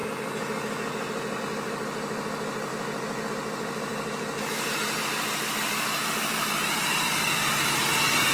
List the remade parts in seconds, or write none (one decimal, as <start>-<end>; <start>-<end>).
3.9-7.8